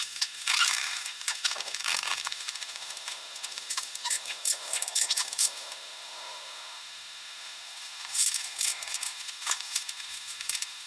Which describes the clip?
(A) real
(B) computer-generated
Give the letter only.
B